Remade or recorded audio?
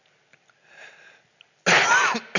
recorded